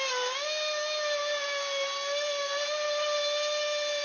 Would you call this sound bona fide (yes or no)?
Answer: yes